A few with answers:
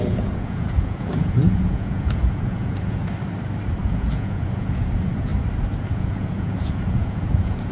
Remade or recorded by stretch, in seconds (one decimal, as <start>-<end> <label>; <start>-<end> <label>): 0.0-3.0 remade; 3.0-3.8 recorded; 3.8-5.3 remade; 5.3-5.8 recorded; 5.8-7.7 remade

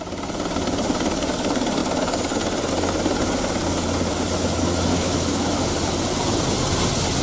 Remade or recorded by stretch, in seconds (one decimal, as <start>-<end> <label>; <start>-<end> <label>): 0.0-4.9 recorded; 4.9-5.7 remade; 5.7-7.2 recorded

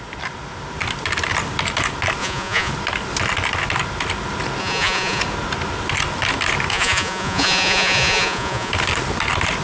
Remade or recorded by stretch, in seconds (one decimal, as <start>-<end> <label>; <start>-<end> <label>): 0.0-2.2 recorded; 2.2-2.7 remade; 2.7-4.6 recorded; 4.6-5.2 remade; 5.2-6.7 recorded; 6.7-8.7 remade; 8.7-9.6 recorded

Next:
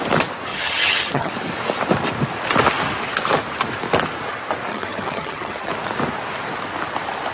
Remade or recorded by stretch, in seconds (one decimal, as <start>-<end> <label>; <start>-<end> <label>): 0.0-0.5 recorded; 0.5-1.3 remade; 1.3-4.7 recorded; 4.7-5.7 remade; 5.7-7.3 recorded

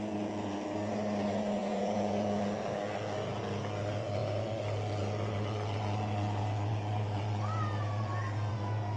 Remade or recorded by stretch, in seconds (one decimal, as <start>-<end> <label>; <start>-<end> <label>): 0.0-1.6 recorded; 1.6-2.4 remade; 2.4-9.0 recorded

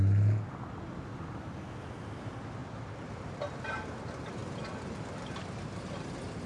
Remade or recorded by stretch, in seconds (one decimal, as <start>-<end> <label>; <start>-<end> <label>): 0.0-2.6 recorded; 2.6-4.0 remade; 4.0-6.5 recorded

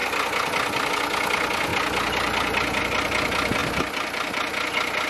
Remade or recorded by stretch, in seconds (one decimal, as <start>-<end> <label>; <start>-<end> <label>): 0.0-5.1 recorded